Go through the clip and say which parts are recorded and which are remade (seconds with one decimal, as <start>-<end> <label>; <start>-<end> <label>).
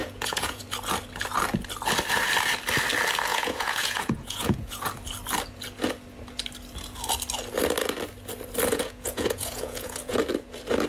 0.0-0.6 remade; 0.6-3.3 recorded; 3.3-4.8 remade; 4.8-8.7 recorded; 8.7-10.2 remade; 10.2-10.9 recorded